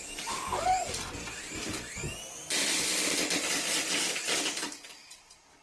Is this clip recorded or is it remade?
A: recorded